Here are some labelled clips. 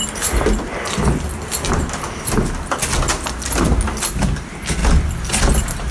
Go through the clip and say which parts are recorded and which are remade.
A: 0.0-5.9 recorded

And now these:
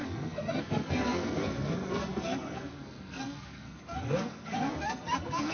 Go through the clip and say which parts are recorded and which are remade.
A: 0.0-5.5 remade